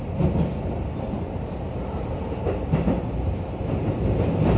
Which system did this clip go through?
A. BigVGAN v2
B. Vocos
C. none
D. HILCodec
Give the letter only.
C